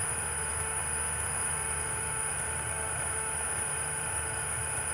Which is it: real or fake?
fake